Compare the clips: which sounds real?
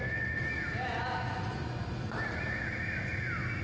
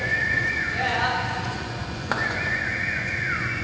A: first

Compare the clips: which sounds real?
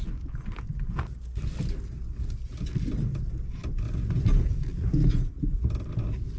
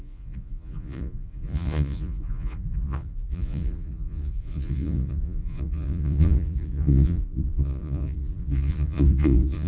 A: first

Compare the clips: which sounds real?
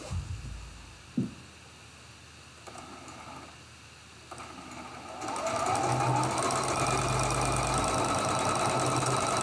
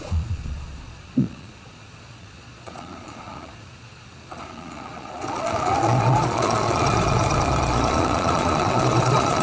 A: first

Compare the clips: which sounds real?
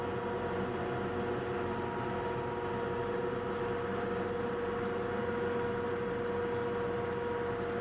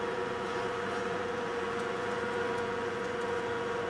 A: first